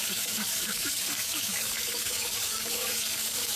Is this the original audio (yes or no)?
no